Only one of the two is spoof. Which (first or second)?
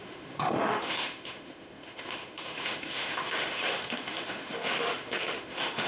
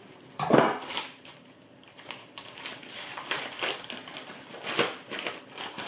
first